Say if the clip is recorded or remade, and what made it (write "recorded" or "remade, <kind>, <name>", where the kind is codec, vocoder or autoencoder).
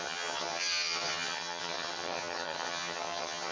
remade, vocoder, HiFi-GAN